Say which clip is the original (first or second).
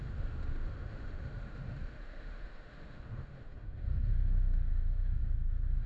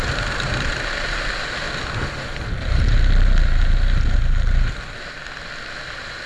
second